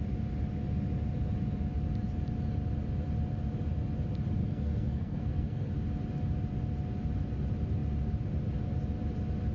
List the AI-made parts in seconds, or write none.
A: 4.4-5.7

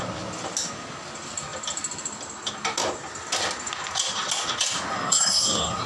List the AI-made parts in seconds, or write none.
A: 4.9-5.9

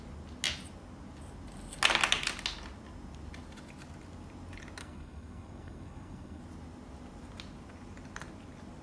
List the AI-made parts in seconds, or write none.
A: 4.8-6.4

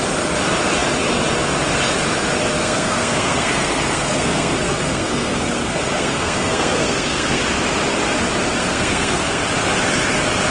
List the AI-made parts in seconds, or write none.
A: 2.6-7.4; 8.6-9.4

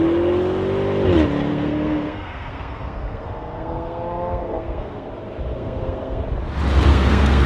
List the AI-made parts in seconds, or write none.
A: 1.5-5.1; 5.5-6.2; 6.9-7.5

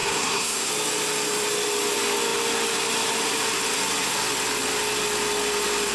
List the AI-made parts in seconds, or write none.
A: 0.0-0.7